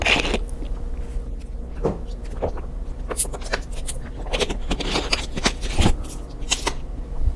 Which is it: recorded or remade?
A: recorded